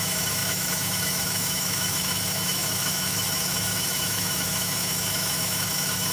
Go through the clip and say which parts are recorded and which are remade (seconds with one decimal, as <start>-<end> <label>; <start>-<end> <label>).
0.0-6.1 remade